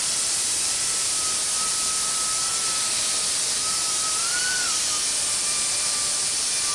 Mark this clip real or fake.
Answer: fake